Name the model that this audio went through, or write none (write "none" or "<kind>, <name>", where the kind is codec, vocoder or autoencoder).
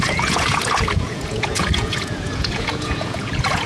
vocoder, Vocos